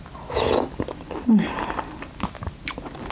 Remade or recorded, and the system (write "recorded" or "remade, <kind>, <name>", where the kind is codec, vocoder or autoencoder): recorded